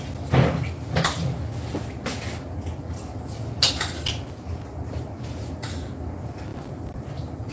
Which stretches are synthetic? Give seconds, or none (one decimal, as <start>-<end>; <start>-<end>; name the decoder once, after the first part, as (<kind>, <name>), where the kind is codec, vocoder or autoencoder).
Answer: none